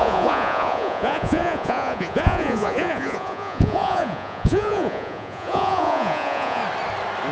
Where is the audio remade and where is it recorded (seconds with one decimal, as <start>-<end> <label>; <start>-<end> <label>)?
0.0-6.6 remade; 6.6-7.3 recorded